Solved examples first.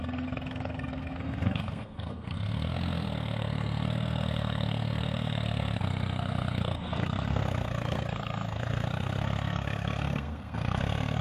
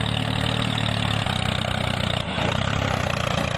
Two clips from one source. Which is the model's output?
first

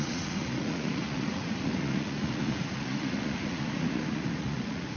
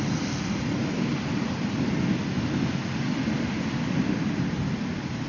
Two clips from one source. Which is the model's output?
first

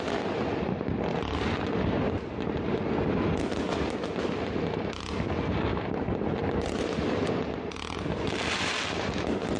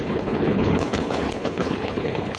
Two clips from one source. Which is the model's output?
second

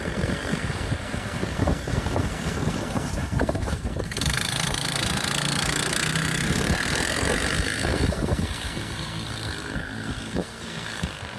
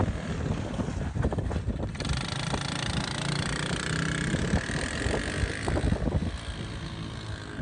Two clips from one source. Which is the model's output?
first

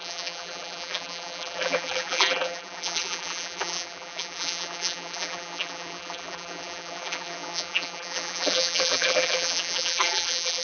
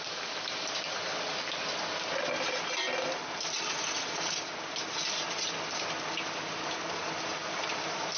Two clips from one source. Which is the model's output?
first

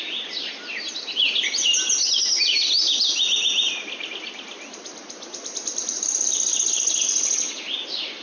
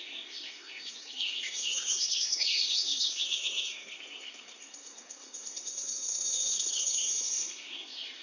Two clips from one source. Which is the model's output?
second